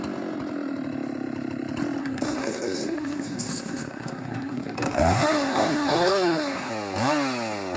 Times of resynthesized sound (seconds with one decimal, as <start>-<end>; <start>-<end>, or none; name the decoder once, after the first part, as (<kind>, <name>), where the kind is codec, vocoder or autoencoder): 2.0-6.7 (codec, SNAC)

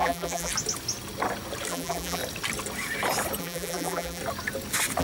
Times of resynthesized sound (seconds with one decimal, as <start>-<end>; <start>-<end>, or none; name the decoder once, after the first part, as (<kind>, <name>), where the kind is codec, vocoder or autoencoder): 0.0-0.5 (vocoder, BigVGAN v2); 1.7-2.2; 3.4-4.2

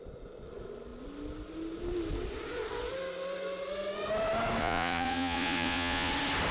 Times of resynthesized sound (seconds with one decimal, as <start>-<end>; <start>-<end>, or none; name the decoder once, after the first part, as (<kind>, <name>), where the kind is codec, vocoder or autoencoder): 4.6-6.1 (vocoder, Vocos)

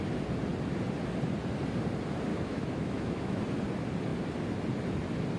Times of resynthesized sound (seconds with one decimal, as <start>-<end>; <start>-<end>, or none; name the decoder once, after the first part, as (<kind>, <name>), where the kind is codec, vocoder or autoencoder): 2.3-3.4 (autoencoder, DAC-VAE)

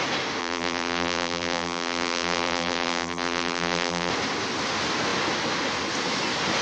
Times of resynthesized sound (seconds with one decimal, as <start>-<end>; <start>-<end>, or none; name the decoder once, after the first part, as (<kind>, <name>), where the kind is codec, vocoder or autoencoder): 0.4-4.1 (vocoder, BigVGAN v2)

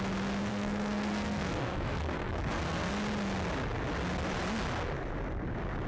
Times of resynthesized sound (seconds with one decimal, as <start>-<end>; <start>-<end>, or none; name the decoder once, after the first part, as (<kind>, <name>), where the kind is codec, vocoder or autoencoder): 0.5-2.9 (codec, SNAC)